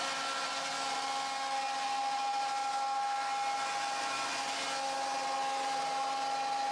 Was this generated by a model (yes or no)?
no